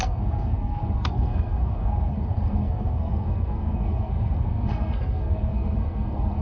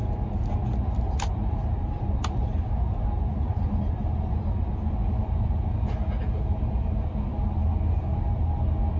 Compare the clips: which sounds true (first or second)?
second